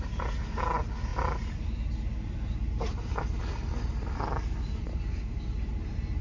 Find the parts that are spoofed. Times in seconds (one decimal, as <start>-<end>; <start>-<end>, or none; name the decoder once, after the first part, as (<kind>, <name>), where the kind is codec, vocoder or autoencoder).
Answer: none